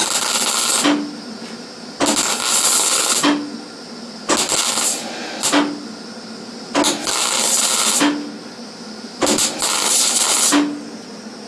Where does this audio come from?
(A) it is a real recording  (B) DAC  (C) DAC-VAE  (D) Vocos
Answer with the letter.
A